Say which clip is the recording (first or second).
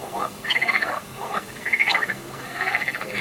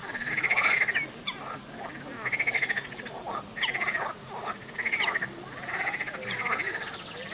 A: second